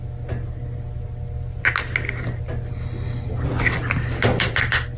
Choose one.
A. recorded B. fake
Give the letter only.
A